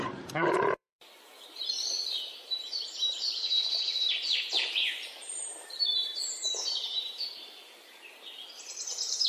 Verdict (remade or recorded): remade